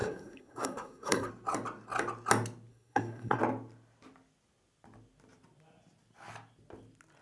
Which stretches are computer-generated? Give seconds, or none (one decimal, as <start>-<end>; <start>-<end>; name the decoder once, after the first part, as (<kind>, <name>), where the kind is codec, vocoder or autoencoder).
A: 0.0-1.3 (codec, SNAC); 2.7-3.4